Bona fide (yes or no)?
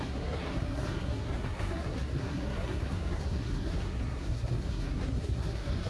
no